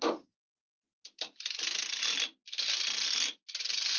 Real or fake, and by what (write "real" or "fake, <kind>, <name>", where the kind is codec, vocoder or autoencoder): real